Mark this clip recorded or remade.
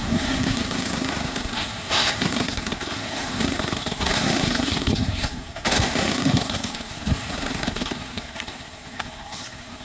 remade